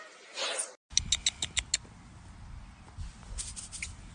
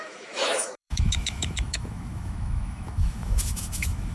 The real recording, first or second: first